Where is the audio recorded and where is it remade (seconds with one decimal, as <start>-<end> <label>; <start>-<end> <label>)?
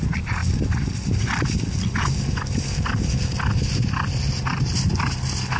0.0-5.6 recorded